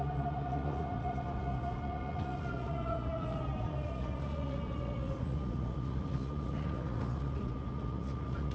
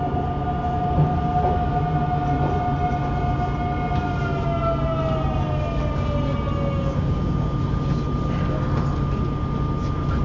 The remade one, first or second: first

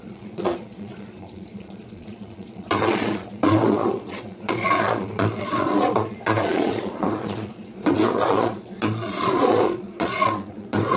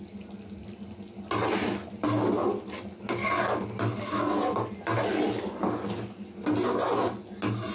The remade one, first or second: first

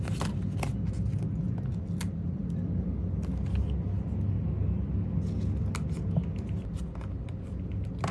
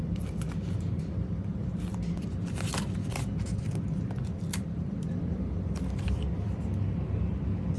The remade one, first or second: second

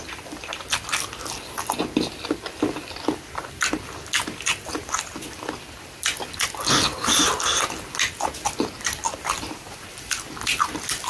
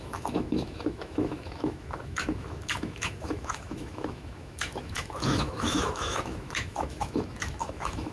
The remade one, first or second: second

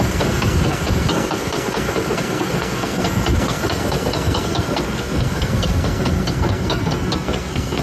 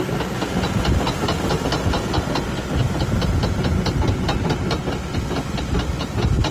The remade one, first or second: first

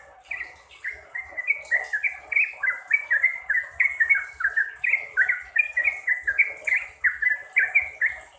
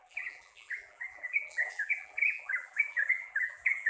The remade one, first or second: second